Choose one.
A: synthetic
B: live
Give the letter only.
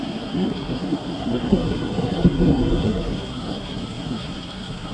A